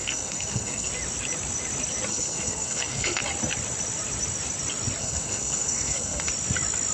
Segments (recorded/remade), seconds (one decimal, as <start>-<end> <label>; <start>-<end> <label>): 0.0-0.9 remade; 0.9-2.1 recorded; 2.1-3.2 remade; 3.2-5.0 recorded; 5.0-6.3 remade; 6.3-6.9 recorded